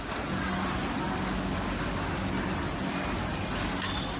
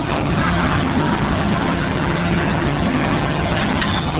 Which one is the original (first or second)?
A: first